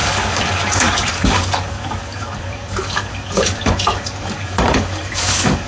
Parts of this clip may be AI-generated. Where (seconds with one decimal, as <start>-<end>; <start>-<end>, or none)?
0.0-5.7